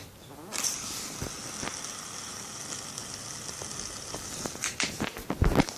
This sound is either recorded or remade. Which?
recorded